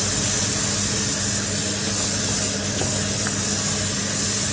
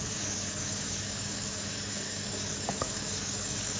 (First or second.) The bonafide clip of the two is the first